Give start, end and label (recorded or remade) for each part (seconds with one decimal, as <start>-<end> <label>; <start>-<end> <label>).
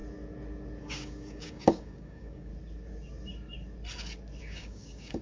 0.0-0.8 recorded; 0.8-2.5 remade; 2.5-4.4 recorded; 4.4-5.2 remade